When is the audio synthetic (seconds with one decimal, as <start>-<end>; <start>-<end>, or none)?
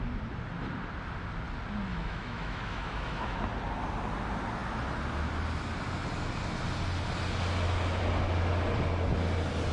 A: 1.9-3.4